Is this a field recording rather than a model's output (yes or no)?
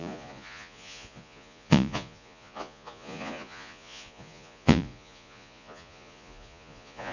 no